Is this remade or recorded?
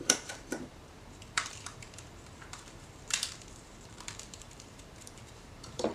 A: remade